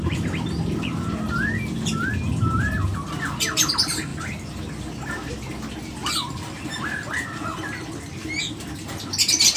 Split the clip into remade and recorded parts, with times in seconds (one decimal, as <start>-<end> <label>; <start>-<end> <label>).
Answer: 0.0-9.6 recorded